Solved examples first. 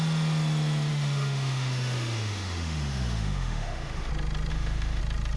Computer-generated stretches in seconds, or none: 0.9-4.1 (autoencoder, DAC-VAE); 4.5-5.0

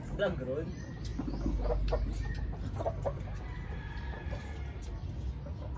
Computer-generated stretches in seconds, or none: none

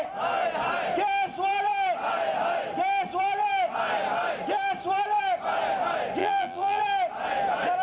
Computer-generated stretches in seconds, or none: 6.2-6.8 (vocoder, BigVGAN v2)